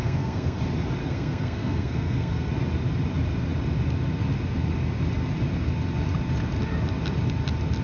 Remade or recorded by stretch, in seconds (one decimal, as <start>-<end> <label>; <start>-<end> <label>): 0.0-0.6 remade; 0.6-1.0 recorded; 1.0-2.5 remade; 2.5-7.8 recorded